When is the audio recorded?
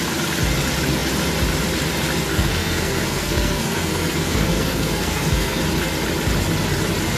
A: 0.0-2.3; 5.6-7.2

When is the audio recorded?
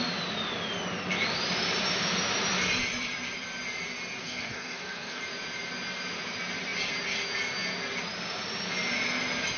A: 0.0-4.2; 5.2-9.6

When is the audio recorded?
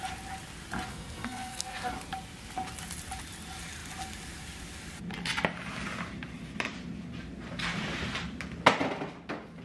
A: 0.0-0.9; 1.9-9.6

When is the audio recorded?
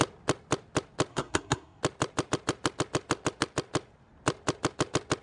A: 0.0-1.1; 1.8-5.2